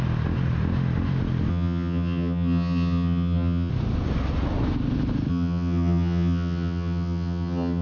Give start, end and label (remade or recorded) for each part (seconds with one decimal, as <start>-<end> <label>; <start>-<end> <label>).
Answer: 0.0-1.5 recorded; 1.5-3.7 remade; 3.7-5.3 recorded; 5.3-7.8 remade